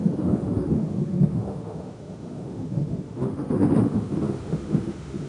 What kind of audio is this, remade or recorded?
remade